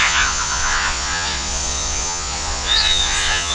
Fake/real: fake